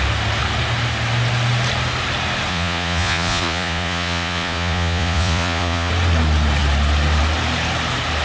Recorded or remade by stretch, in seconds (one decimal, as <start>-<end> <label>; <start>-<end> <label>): 0.0-2.5 recorded; 2.5-5.9 remade; 5.9-8.2 recorded